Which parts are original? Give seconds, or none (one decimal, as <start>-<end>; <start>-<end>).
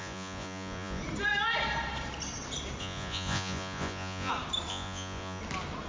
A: 1.0-2.8; 4.3-4.7; 5.4-5.9